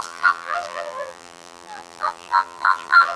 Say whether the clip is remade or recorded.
remade